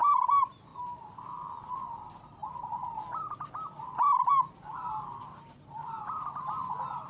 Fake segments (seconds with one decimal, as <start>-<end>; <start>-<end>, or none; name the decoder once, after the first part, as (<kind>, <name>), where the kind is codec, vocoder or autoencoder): 0.7-1.6 (vocoder, BigVGAN v2); 4.8-6.0